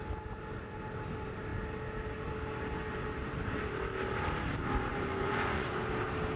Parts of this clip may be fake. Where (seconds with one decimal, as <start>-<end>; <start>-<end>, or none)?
4.9-5.8

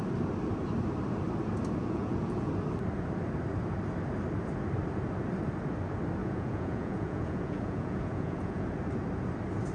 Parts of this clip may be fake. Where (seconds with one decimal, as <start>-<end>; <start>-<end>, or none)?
1.8-2.5; 6.2-8.7

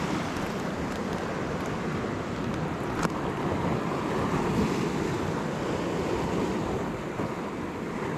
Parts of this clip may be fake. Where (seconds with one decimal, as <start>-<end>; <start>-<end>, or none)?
none

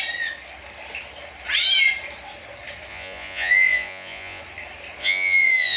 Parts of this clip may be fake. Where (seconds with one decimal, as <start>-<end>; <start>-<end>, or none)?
2.9-4.4; 5.0-5.8

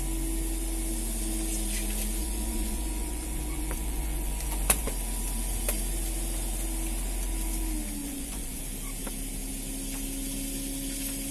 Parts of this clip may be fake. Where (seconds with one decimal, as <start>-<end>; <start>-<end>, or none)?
2.2-4.9; 8.0-8.6

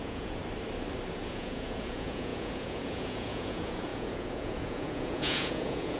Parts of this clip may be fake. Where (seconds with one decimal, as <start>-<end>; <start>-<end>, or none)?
0.0-0.4; 1.1-6.0

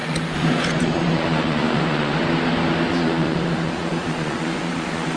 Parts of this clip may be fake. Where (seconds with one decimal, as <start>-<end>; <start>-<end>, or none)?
0.0-2.2; 2.9-5.2